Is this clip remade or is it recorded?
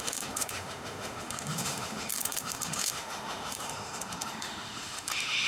remade